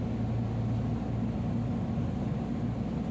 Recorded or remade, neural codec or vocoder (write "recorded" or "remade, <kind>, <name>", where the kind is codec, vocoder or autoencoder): recorded